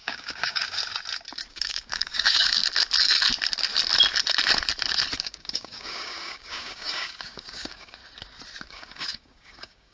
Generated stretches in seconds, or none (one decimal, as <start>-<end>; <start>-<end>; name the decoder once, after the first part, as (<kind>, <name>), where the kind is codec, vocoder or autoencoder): 0.0-0.8 (codec, DAC); 1.5-2.6; 5.2-8.0; 8.7-9.9